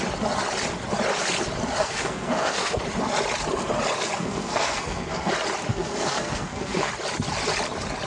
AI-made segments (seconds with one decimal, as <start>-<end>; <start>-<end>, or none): 1.8-2.8; 4.2-5.3; 5.7-6.9